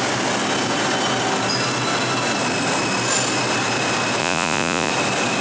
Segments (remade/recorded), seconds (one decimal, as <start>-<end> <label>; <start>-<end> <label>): 0.0-4.2 recorded; 4.2-4.9 remade; 4.9-5.4 recorded